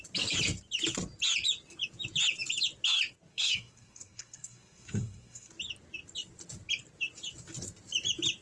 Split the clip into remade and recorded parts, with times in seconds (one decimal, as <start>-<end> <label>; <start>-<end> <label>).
0.0-3.3 recorded; 3.3-5.5 remade; 5.5-8.4 recorded